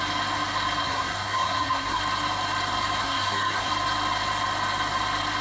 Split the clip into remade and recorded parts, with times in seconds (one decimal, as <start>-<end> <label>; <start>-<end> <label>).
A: 0.0-0.8 recorded; 0.8-2.0 remade; 2.0-3.0 recorded; 3.0-3.7 remade; 3.7-5.4 recorded